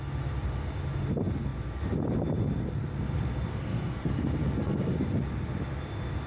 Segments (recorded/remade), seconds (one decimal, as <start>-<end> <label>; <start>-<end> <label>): 0.0-3.5 recorded; 3.5-4.1 remade; 4.1-6.3 recorded